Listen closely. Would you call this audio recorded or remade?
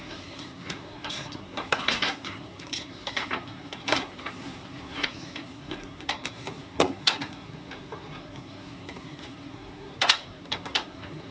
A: remade